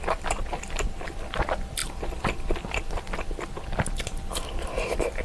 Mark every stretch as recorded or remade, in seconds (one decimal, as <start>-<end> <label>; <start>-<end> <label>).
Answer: 0.0-5.2 remade